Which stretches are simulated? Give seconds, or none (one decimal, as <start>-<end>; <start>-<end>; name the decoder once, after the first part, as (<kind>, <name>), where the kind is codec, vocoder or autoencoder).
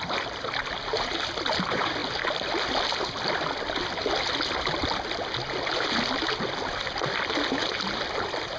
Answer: none